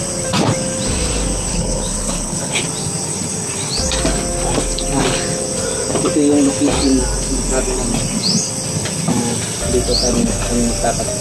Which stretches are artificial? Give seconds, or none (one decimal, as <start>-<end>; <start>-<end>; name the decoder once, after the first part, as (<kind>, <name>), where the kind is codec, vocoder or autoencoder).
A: 1.5-2.6 (codec, HILCodec)